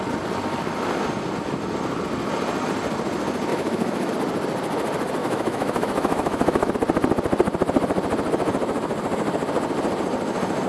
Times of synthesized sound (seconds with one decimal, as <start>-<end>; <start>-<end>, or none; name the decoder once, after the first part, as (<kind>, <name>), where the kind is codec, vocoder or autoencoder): 3.5-4.1 (autoencoder, DAC-VAE); 5.2-6.7